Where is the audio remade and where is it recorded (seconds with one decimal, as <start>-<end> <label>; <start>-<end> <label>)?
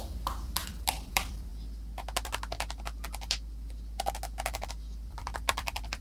0.0-1.5 remade; 1.5-5.1 recorded; 5.1-6.0 remade